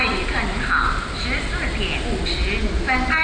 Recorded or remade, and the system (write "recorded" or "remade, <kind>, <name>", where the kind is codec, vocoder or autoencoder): recorded